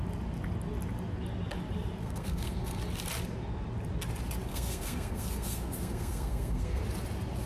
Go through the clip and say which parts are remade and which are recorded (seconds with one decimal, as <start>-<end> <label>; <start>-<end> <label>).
0.0-2.0 recorded; 2.0-2.8 remade; 2.8-4.5 recorded; 4.5-6.8 remade; 6.8-7.5 recorded